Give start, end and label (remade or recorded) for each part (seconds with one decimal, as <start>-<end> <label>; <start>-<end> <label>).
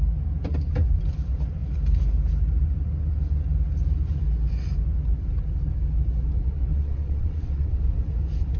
0.0-6.7 recorded; 6.7-7.8 remade; 7.8-8.6 recorded